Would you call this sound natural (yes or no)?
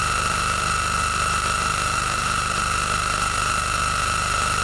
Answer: yes